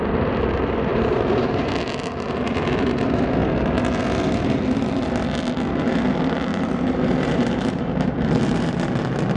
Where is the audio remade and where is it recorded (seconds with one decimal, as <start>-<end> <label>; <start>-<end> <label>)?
0.0-0.9 recorded; 0.9-1.7 remade; 1.7-6.5 recorded; 6.5-8.7 remade; 8.7-9.4 recorded